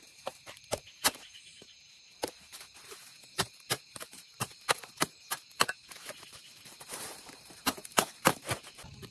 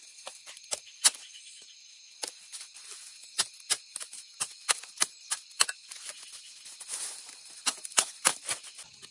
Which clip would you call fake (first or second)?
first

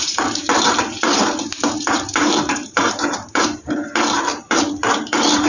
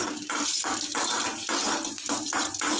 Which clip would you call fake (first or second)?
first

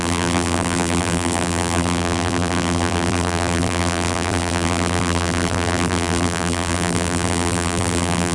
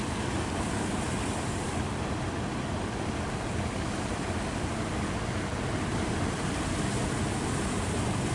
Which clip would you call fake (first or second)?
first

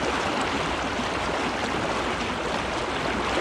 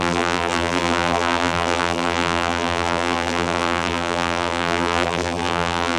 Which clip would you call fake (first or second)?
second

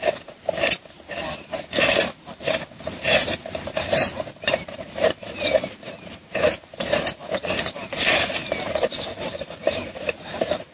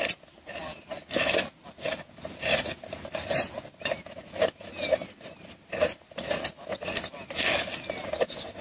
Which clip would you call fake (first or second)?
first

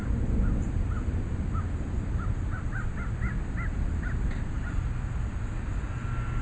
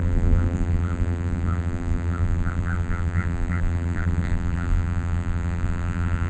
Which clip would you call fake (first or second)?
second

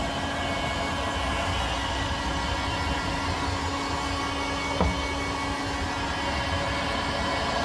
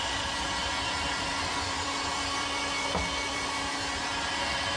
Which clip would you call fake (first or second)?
second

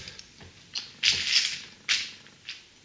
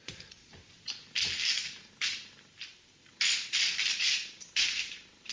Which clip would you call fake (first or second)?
second